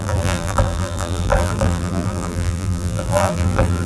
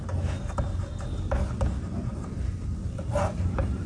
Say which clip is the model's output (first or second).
first